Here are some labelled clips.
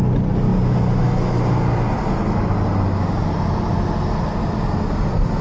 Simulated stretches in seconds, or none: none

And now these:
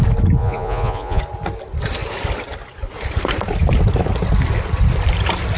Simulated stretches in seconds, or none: 0.4-1.2 (vocoder, Vocos)

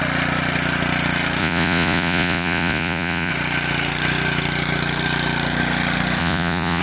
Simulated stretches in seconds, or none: 1.4-3.3 (vocoder, Vocos); 6.2-6.8

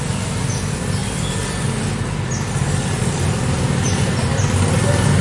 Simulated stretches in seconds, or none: none

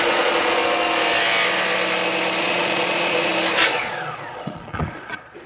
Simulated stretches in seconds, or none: 0.0-0.6 (vocoder, Vocos); 2.4-3.3; 3.8-5.5

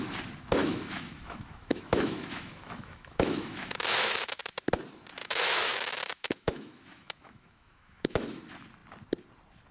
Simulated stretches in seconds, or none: 0.6-4.4 (autoencoder, DAC-VAE); 5.2-8.4

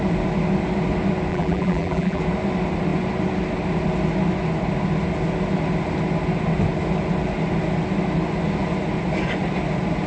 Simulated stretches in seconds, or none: 1.3-2.2 (vocoder, BigVGAN v2)